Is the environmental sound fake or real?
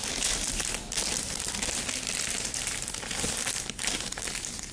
real